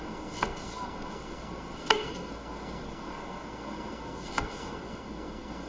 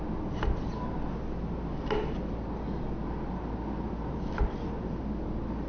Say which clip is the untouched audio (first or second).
second